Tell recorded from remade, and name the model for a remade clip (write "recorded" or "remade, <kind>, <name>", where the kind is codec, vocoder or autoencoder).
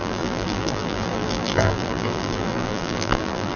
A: remade, vocoder, BigVGAN v2